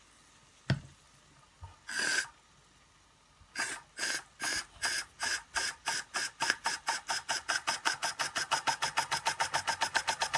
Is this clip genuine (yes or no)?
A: yes